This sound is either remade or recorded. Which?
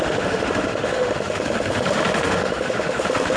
remade